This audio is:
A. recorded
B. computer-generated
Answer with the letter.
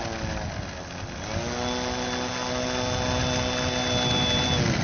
A